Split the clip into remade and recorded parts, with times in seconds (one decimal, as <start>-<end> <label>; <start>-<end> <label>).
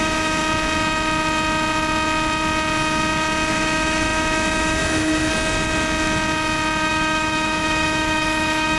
0.0-0.4 remade; 0.4-3.5 recorded; 3.5-5.3 remade; 5.3-6.9 recorded; 6.9-8.8 remade